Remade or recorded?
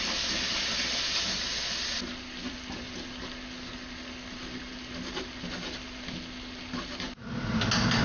recorded